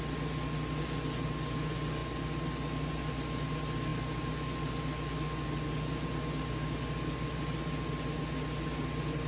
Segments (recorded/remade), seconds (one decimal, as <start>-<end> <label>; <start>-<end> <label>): 0.0-9.3 recorded